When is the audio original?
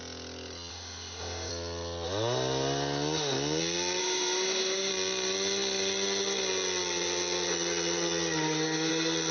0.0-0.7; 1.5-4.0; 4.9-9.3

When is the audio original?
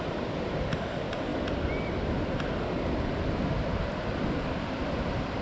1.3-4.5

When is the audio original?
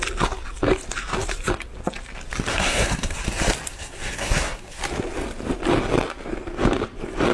0.0-2.5; 3.2-3.7; 4.8-7.3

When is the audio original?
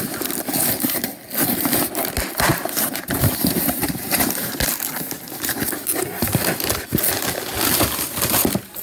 0.0-2.5; 4.6-8.8